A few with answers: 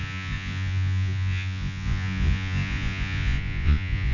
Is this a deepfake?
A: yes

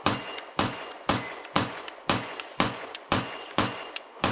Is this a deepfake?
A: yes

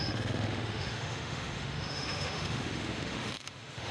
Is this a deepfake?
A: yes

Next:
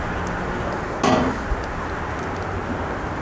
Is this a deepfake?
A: no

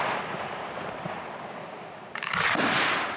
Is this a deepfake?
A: no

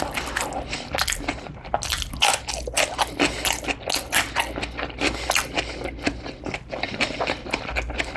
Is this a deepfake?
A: no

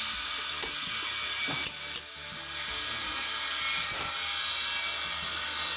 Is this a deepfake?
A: no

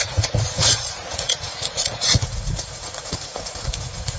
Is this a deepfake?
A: yes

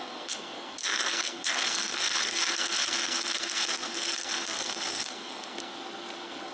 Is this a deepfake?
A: yes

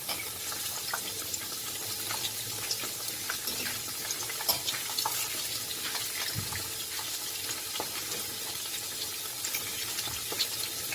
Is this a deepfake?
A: no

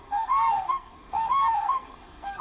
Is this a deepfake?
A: yes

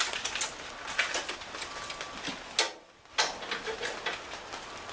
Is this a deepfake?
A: no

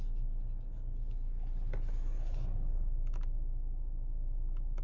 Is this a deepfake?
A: no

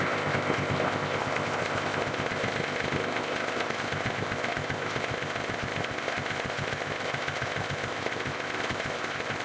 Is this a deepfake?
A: yes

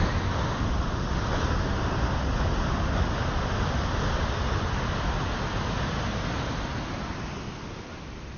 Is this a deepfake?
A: no